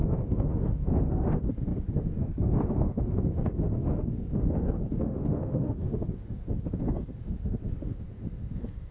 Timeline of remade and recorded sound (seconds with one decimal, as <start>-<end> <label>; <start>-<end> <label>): 0.0-8.9 remade